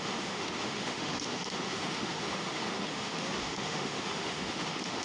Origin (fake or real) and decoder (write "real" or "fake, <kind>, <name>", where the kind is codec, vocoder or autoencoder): fake, autoencoder, DAC-VAE